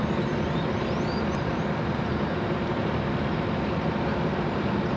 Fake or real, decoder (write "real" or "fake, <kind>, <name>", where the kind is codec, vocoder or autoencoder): fake, vocoder, BigVGAN v2